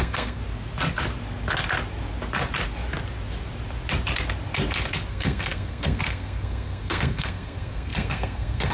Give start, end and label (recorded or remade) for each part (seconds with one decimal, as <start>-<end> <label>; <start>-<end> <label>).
0.0-0.4 remade; 0.4-5.1 recorded; 5.1-8.7 remade